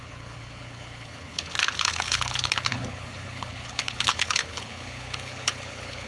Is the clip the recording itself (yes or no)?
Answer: no